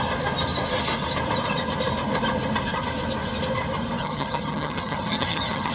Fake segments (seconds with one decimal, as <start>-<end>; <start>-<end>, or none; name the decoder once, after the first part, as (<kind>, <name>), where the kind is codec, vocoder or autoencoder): 4.0-5.7 (vocoder, HiFi-GAN)

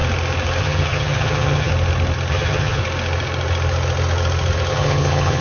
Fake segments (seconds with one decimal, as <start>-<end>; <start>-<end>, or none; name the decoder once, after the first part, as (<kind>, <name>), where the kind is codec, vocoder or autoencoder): 0.6-1.7 (vocoder, HiFi-GAN); 2.3-2.8; 4.7-5.4

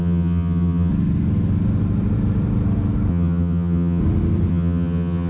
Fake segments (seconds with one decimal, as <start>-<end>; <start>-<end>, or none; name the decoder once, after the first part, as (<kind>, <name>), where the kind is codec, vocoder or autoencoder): 0.0-0.9 (vocoder, HiFi-GAN); 3.1-4.0; 4.5-5.3

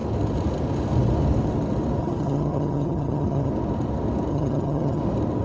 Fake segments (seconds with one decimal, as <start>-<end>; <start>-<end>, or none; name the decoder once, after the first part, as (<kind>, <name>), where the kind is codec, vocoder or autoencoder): 2.0-3.5 (vocoder, HiFi-GAN); 4.3-5.0

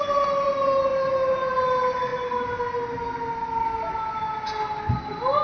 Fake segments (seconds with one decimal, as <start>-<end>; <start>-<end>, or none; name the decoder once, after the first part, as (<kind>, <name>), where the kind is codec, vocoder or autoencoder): none

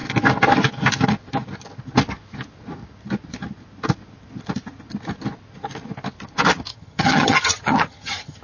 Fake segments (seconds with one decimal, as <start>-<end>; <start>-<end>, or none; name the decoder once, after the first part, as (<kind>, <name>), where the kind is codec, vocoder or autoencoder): 6.7-8.4 (vocoder, HiFi-GAN)